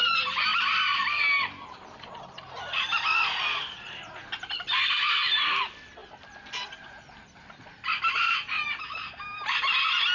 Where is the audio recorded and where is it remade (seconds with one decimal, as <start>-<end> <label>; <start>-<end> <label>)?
0.0-0.5 recorded; 0.5-5.6 remade; 5.6-6.0 recorded; 6.0-8.1 remade; 8.1-10.1 recorded